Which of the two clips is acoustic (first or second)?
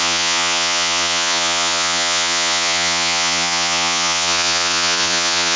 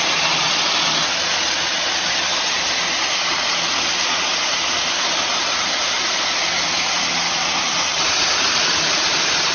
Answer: second